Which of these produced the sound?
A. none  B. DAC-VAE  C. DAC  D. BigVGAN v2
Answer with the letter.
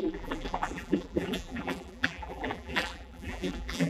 D